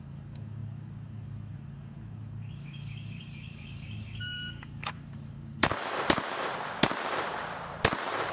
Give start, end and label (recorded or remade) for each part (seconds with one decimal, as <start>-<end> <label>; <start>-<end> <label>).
0.0-5.8 remade; 5.8-8.3 recorded